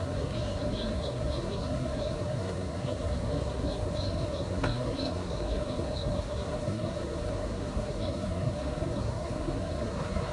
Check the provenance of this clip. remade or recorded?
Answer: remade